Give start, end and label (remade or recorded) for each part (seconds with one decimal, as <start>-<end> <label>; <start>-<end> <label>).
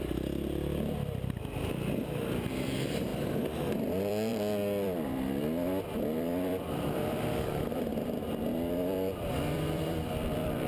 0.0-3.1 remade; 3.1-3.7 recorded; 3.7-10.7 remade